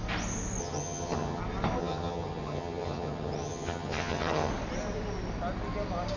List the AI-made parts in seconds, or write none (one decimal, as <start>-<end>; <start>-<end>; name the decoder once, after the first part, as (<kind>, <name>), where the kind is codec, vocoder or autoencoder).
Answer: 0.6-1.4 (vocoder, HiFi-GAN); 1.8-4.5